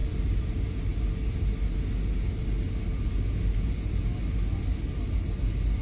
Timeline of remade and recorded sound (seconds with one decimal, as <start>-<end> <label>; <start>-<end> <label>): 0.0-5.8 recorded